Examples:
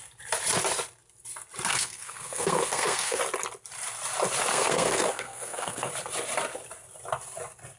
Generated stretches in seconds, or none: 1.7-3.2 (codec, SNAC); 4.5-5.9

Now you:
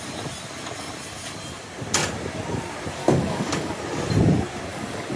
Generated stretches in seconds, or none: 3.0-3.8 (codec, DAC); 4.7-5.2

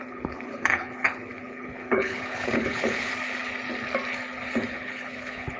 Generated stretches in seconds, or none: 0.0-3.1 (codec, HILCodec); 4.7-5.6

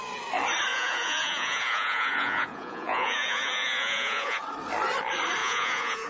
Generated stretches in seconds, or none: 0.7-4.4 (vocoder, Vocos); 5.4-6.1

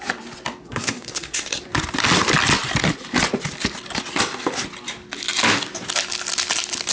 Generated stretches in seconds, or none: 0.6-1.6 (codec, SNAC)

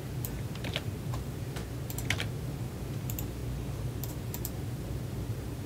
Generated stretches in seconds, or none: 0.0-1.6 (vocoder, BigVGAN v2); 2.4-3.4; 4.1-5.7